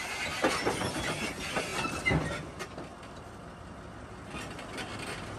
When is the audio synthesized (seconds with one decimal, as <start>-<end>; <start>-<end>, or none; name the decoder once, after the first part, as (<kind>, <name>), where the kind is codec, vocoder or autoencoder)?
none